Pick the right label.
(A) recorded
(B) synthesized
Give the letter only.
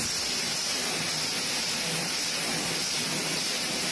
A